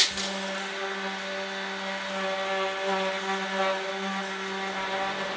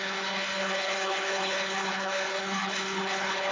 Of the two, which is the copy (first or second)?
second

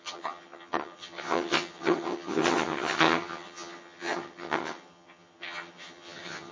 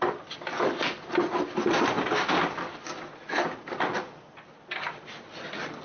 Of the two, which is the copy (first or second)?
first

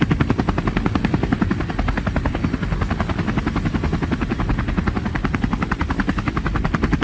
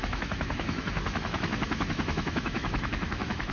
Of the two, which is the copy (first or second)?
second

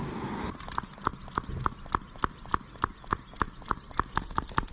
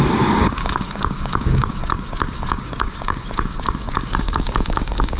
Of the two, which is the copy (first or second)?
second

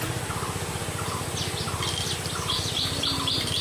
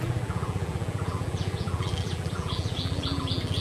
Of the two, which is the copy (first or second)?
second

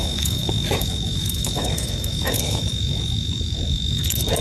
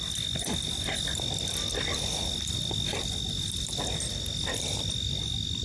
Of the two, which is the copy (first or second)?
first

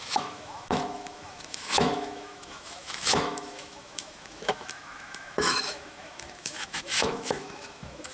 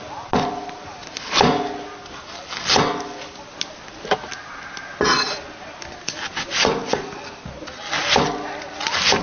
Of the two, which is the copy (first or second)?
first